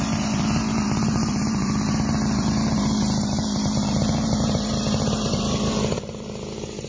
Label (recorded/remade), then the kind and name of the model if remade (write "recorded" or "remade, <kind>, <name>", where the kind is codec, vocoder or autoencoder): remade, vocoder, BigVGAN v2